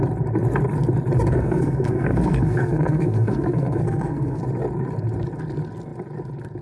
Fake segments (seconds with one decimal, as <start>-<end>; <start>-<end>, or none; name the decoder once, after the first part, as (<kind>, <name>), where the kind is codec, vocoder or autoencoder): 1.3-4.4 (codec, SNAC)